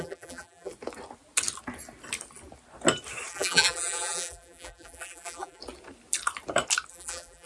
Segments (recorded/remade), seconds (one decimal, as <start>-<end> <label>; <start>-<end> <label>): 0.0-0.7 remade; 0.7-3.3 recorded; 3.3-5.6 remade; 5.6-6.9 recorded; 6.9-7.5 remade